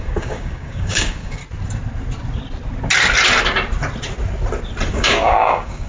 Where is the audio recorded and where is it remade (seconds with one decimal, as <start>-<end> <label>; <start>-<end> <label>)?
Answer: 0.0-1.4 remade; 1.4-4.9 recorded; 4.9-5.9 remade